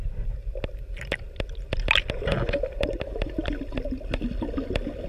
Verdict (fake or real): fake